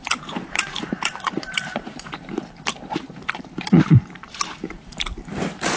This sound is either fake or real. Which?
fake